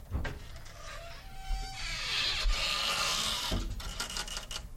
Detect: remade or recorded recorded